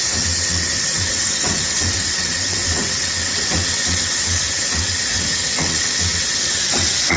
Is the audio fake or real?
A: fake